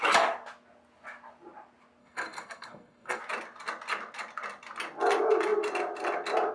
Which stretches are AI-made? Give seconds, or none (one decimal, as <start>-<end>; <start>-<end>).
2.0-3.2